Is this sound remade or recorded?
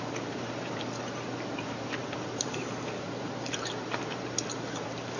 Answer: remade